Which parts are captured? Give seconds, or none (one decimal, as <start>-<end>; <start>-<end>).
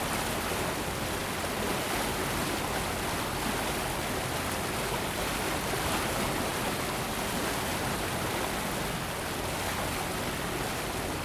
0.0-11.2